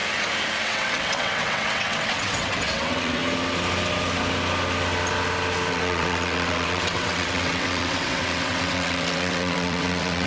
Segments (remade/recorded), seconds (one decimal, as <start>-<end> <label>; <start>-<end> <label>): 0.0-0.6 recorded; 0.6-3.2 remade; 3.2-5.7 recorded; 5.7-10.3 remade